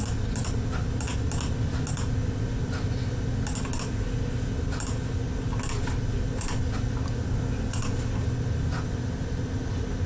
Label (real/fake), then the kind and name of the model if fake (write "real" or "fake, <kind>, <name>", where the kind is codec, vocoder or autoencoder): real